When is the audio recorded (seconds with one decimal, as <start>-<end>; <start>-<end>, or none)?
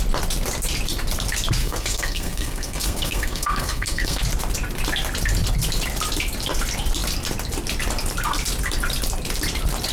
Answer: 0.0-1.6; 4.2-9.9